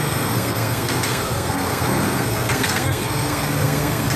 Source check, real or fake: fake